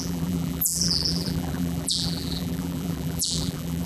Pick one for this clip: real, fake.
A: fake